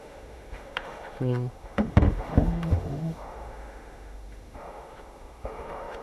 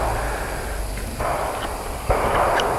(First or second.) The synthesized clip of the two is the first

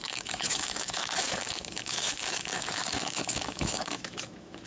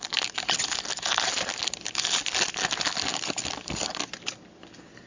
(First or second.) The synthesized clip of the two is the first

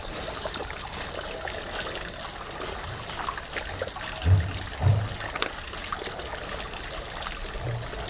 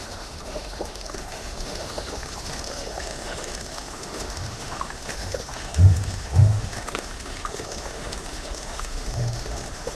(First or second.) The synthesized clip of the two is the second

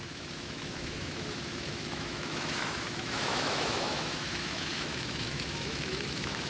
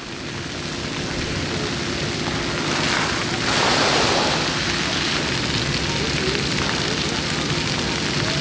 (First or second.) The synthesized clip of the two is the first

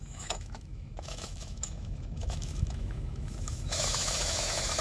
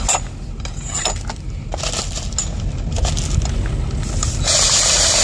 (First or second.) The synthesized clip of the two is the first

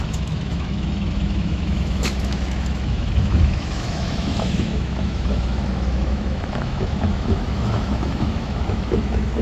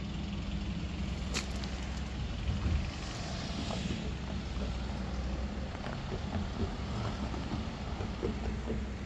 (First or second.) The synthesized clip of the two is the first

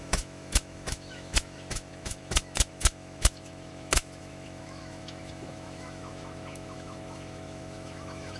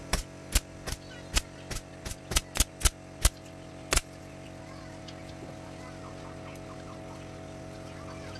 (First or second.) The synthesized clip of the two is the first